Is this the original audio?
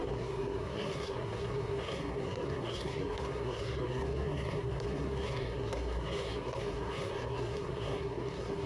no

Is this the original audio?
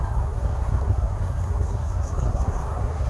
no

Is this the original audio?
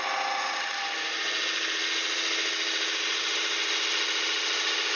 yes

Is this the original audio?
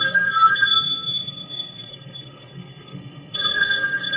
no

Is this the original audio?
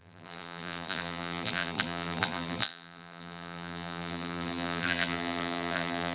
no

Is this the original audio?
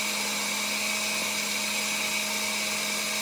yes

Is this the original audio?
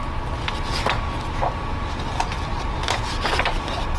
yes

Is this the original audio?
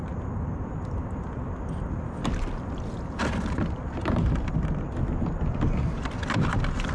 yes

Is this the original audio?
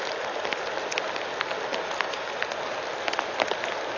yes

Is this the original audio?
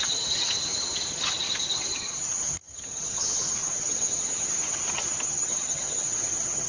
no